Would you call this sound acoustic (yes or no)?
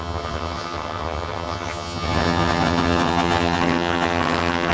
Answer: no